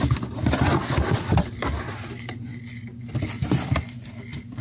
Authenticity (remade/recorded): recorded